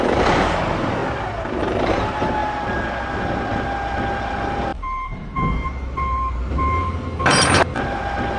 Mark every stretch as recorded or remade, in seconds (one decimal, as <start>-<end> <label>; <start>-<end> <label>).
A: 0.0-1.0 remade; 1.0-1.6 recorded; 1.6-2.4 remade; 2.4-4.3 recorded; 4.3-8.4 remade